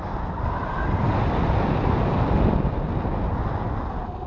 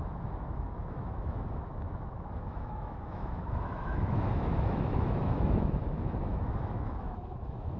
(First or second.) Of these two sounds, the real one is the first